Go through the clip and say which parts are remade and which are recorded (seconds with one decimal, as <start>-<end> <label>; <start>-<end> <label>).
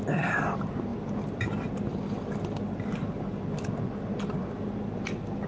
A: 0.0-5.5 recorded